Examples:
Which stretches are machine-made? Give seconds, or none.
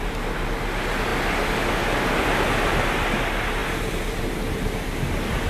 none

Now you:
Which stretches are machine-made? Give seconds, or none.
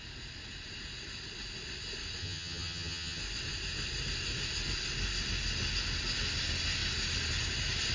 2.2-3.2 (vocoder, HiFi-GAN)